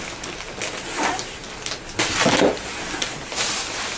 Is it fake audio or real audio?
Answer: real